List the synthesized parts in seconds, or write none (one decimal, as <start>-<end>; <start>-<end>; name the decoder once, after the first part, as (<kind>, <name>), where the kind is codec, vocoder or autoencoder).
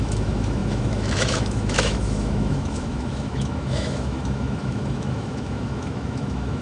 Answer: 0.0-6.6 (autoencoder, DAC-VAE)